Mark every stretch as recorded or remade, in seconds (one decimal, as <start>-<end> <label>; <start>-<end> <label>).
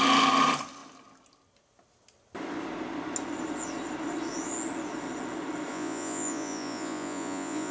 0.0-5.7 recorded; 5.7-7.7 remade